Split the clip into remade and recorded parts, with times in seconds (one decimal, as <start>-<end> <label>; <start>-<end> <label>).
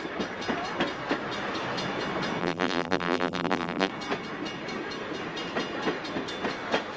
0.0-2.4 recorded; 2.4-3.9 remade; 3.9-7.0 recorded